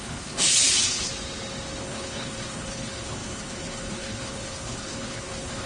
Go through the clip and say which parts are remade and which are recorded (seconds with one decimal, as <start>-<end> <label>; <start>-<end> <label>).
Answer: 0.0-1.1 remade; 1.1-1.8 recorded; 1.8-5.7 remade